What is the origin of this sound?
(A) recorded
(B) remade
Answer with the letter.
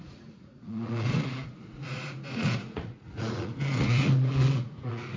B